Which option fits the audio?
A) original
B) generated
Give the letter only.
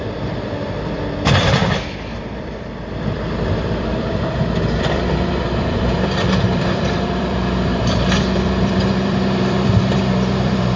B